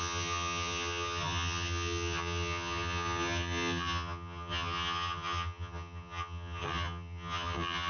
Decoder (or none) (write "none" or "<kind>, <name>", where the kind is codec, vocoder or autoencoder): vocoder, HiFi-GAN